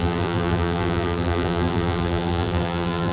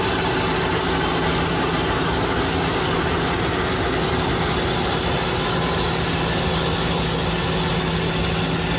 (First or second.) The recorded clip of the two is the second